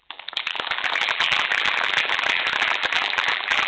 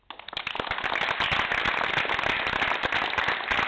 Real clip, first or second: second